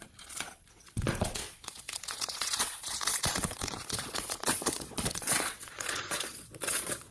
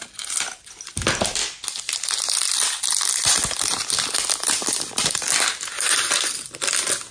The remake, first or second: first